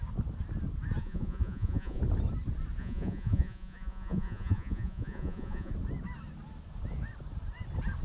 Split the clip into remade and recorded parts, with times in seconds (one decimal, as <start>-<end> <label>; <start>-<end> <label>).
0.0-1.0 recorded; 1.0-2.0 remade; 2.0-2.8 recorded; 2.8-5.7 remade; 5.7-8.0 recorded